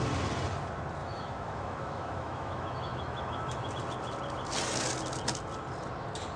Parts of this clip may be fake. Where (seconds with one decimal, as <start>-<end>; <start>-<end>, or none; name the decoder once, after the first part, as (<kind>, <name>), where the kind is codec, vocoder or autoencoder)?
1.0-3.7 (autoencoder, DAC-VAE)